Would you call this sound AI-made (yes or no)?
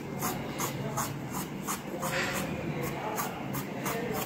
no